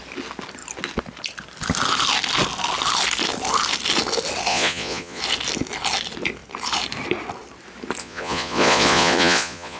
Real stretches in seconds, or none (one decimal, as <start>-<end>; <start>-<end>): 0.0-4.5; 5.2-8.0